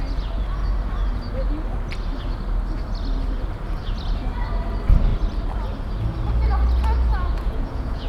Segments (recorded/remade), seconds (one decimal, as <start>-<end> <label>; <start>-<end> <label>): 0.0-7.1 recorded; 7.1-8.1 remade